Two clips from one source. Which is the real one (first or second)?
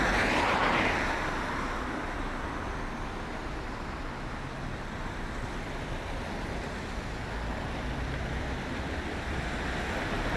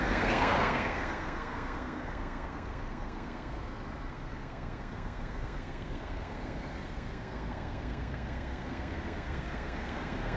first